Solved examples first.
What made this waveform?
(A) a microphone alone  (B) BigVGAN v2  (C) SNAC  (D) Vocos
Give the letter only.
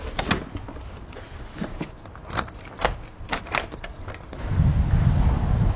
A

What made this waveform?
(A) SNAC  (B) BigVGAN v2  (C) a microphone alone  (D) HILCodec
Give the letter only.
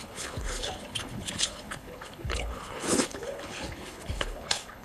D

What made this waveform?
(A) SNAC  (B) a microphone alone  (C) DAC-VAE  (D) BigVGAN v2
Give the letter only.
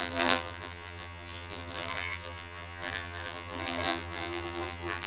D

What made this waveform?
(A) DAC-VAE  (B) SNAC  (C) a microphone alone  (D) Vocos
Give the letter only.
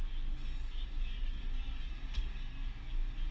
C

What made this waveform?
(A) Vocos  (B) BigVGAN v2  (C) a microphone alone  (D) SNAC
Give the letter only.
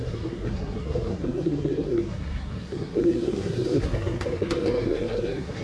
D